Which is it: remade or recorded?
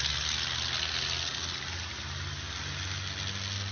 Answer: recorded